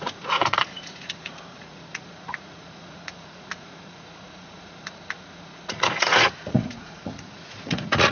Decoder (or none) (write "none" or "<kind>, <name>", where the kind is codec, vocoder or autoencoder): vocoder, Vocos